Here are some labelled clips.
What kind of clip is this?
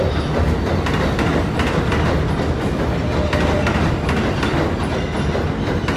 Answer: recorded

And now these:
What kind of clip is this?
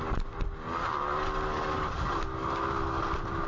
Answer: recorded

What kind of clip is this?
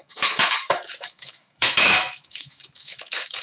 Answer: remade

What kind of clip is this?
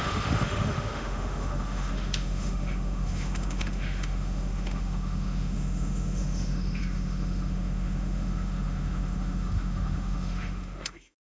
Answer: remade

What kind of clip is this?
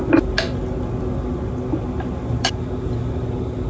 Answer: recorded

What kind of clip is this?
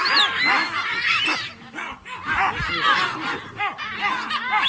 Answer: recorded